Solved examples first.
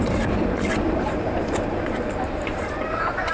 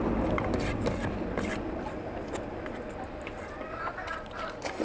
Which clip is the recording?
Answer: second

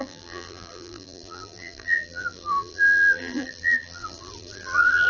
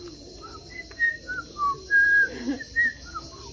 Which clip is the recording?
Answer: second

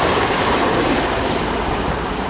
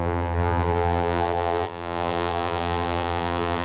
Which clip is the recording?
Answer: first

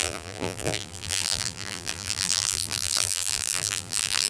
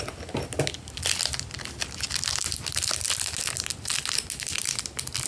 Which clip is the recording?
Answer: second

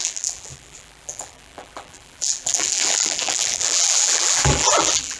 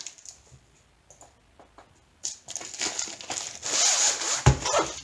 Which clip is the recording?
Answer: second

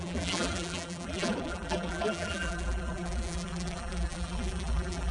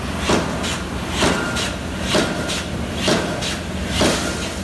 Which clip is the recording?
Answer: second